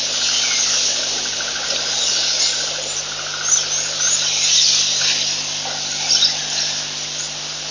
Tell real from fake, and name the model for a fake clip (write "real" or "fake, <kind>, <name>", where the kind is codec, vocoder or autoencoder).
real